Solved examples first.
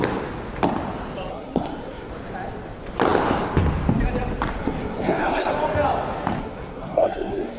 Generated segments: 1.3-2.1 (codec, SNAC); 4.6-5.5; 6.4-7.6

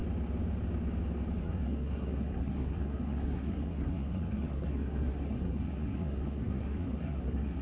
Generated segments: 1.4-7.6 (codec, SNAC)

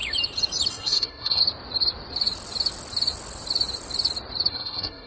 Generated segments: 0.7-1.4 (codec, SNAC); 4.5-5.1

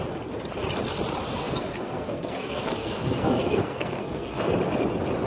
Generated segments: 1.3-4.5 (codec, SNAC)